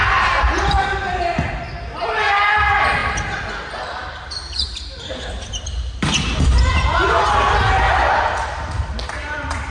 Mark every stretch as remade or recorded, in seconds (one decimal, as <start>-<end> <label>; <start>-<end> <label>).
0.0-9.7 recorded

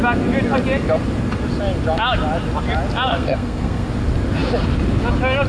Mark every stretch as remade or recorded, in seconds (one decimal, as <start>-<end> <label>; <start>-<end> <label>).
0.0-3.1 recorded; 3.1-3.9 remade; 3.9-5.5 recorded

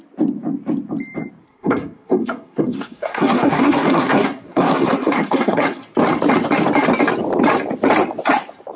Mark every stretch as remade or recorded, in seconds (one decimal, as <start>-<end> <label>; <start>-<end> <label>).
0.0-1.4 recorded; 1.4-5.8 remade; 5.8-8.8 recorded